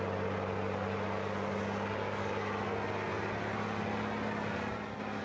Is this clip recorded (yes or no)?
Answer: yes